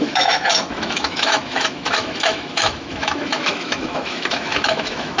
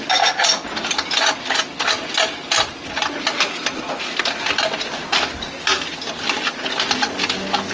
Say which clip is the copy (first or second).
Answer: first